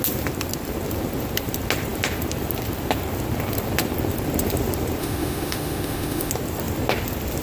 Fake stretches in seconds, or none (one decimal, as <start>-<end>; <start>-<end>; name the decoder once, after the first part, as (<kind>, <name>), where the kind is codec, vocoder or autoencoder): 5.0-6.3 (autoencoder, DAC-VAE)